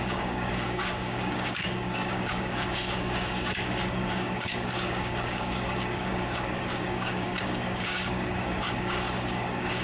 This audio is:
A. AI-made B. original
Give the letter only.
A